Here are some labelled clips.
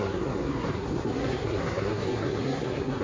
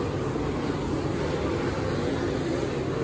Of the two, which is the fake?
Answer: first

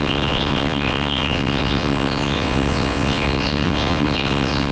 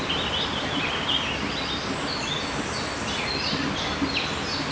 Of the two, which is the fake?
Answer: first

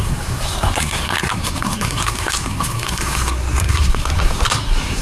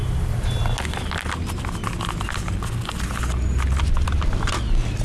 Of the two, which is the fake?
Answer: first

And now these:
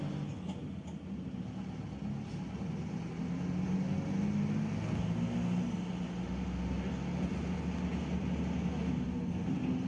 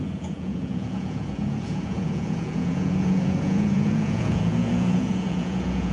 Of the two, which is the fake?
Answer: second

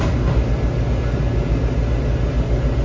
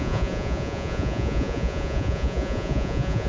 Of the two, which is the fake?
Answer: second